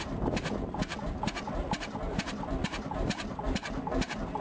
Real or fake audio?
real